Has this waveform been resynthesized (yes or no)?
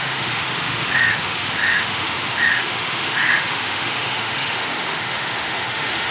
yes